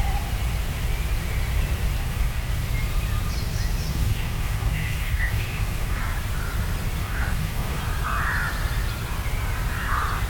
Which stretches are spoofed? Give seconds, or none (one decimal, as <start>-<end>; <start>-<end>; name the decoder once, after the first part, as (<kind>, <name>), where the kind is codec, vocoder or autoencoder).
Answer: 2.0-2.5 (codec, DAC); 3.9-6.0; 7.0-7.8